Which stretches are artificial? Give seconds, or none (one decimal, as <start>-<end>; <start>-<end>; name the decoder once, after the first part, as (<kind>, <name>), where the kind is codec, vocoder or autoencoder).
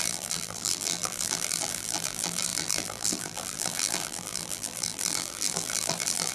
0.0-6.3 (vocoder, BigVGAN v2)